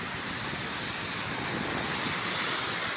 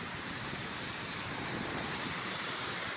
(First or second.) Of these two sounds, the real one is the first